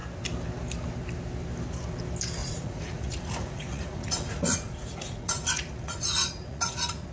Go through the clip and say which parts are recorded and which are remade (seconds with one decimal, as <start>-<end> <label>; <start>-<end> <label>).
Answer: 0.0-2.4 recorded; 2.4-7.1 remade